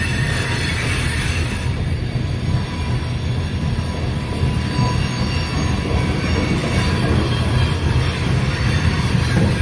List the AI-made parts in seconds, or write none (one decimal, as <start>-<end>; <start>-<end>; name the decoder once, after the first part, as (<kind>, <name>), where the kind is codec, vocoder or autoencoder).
none